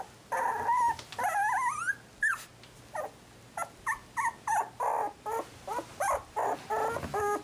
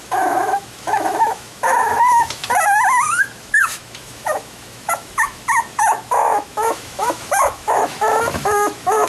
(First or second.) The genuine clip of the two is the first